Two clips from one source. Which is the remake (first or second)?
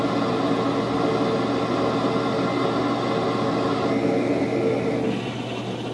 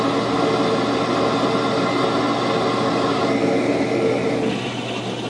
second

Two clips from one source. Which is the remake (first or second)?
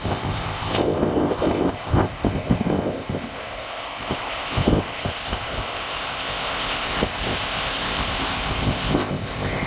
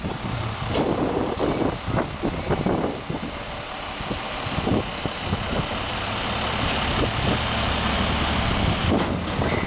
first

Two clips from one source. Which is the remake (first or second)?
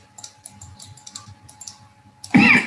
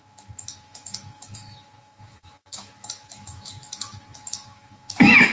second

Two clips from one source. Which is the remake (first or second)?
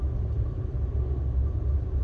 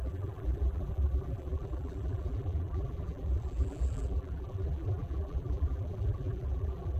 second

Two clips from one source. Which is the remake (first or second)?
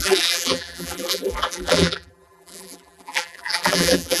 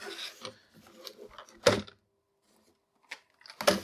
first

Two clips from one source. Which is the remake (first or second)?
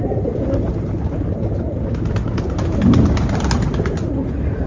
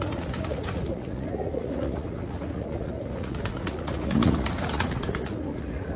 second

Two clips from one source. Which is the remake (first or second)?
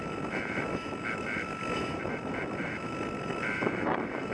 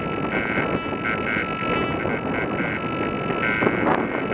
first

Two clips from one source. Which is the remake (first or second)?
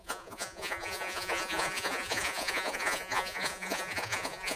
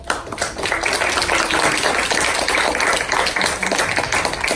first